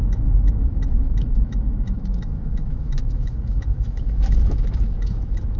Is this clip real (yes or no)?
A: no